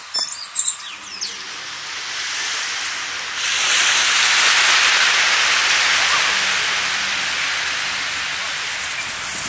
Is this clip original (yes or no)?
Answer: yes